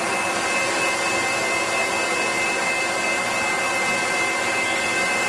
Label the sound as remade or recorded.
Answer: recorded